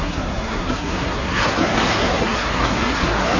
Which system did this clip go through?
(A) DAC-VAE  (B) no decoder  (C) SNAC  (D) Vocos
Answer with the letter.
C